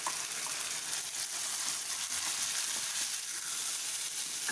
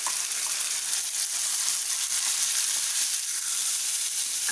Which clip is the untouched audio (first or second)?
first